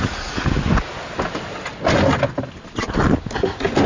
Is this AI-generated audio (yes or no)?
no